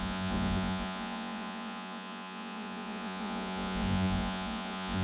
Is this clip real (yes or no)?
no